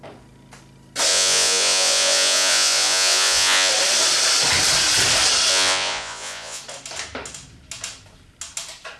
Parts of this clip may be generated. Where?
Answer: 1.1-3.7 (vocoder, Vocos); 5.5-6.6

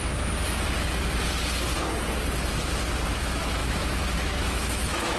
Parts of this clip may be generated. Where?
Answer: 3.1-5.2 (autoencoder, DAC-VAE)

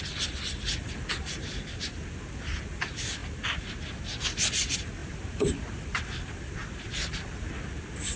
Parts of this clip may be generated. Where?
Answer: 5.0-7.4 (vocoder, BigVGAN v2)

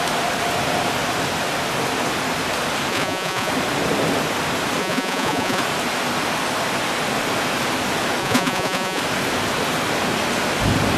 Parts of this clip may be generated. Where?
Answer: 2.9-3.5 (vocoder, Vocos); 4.8-5.6; 8.2-9.0

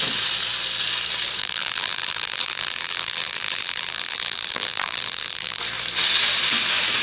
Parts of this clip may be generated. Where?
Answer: 1.4-5.6 (vocoder, BigVGAN v2)

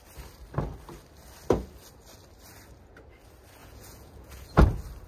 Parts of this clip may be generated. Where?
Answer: 3.6-4.6 (vocoder, Vocos)

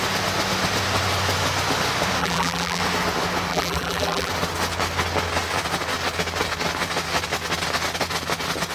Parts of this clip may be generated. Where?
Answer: 2.2-2.8 (vocoder, BigVGAN v2); 3.5-4.3

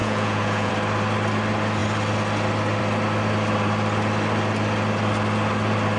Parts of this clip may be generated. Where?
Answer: 0.0-0.7 (vocoder, Vocos)